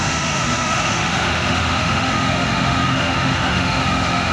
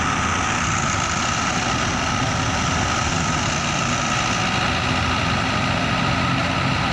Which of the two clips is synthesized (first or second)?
first